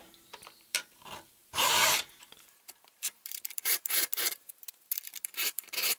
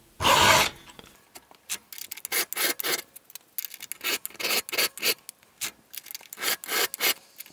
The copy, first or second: first